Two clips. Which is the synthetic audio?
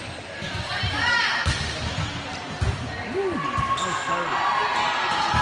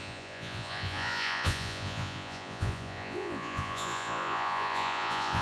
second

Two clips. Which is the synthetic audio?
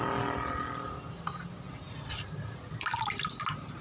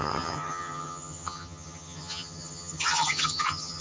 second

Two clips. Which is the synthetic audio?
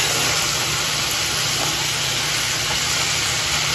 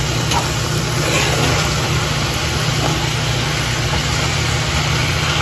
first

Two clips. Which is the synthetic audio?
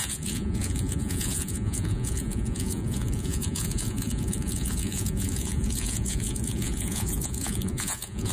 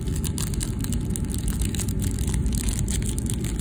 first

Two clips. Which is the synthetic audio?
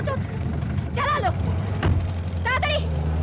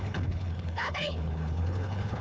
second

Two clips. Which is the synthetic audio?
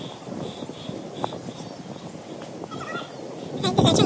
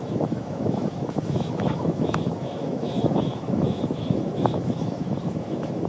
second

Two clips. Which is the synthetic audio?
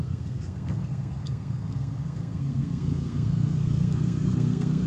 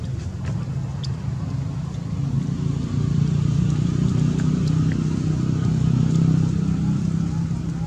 first